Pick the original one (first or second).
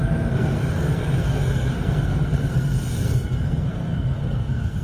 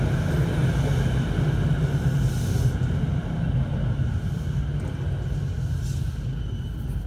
second